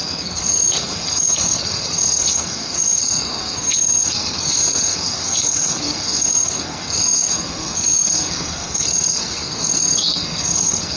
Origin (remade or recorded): remade